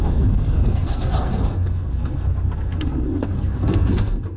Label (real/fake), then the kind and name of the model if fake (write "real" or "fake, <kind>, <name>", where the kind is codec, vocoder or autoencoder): fake, codec, SNAC